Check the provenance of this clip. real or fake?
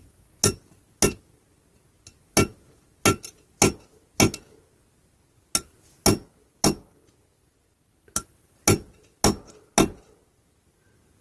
real